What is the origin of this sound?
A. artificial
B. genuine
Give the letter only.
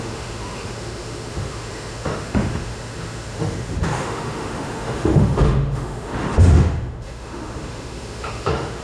A